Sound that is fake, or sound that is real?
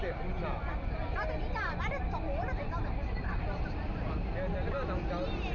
real